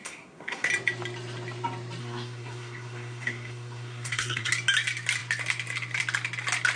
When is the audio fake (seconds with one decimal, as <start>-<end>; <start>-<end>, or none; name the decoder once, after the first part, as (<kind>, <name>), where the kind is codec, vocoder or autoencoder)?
0.0-0.7 (codec, SNAC); 2.0-4.5

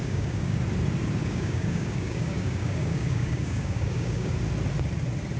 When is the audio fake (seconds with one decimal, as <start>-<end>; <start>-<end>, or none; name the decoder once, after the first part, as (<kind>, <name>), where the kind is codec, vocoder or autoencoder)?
0.0-0.6 (codec, DAC); 1.2-4.4

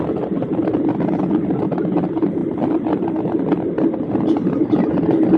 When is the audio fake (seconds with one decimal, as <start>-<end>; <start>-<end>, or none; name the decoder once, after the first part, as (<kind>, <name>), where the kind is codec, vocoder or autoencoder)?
0.6-1.1 (vocoder, BigVGAN v2)

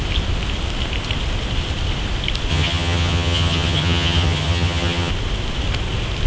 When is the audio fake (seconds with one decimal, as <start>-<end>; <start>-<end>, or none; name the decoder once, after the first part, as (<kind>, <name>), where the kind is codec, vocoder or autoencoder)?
2.5-5.1 (vocoder, HiFi-GAN)

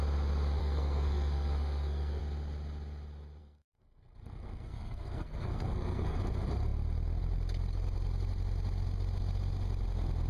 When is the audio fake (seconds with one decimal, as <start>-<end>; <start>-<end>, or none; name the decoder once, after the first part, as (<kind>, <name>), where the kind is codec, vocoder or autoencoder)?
0.6-2.2 (codec, SNAC); 3.4-6.2

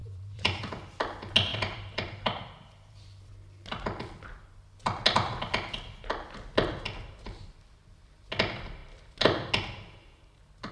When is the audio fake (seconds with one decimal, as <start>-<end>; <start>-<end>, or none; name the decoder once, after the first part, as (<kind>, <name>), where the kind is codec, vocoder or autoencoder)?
0.0-0.7 (vocoder, BigVGAN v2); 1.5-3.3

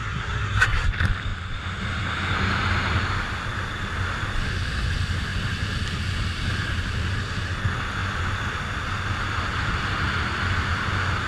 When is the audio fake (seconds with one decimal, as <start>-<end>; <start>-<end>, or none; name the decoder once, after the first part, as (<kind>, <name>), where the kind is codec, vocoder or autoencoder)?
0.0-0.9 (codec, SNAC)